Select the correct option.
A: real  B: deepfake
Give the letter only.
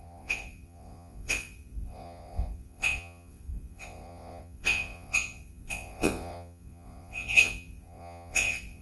B